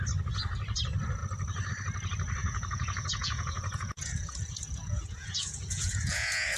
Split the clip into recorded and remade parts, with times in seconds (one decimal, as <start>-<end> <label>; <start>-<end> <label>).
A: 0.0-2.4 recorded; 2.4-6.6 remade